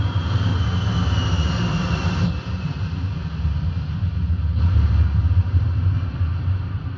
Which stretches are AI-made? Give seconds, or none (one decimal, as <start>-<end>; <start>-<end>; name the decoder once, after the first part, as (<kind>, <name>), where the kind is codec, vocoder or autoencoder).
0.0-0.5 (vocoder, BigVGAN v2); 1.9-3.2; 5.4-7.0